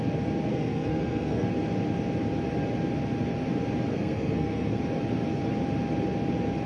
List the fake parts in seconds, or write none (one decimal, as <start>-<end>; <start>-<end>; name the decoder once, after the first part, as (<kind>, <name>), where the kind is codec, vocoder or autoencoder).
0.5-1.5 (codec, SNAC); 3.9-4.8